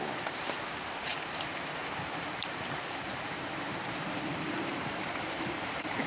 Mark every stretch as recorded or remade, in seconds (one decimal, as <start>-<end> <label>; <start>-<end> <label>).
0.0-6.1 remade